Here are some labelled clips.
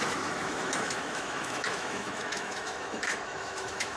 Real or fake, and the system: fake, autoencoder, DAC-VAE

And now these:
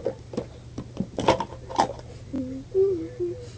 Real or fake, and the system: real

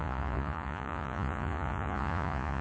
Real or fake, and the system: fake, vocoder, Vocos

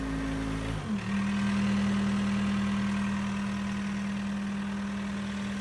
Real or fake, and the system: real